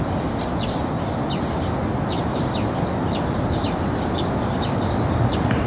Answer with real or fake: real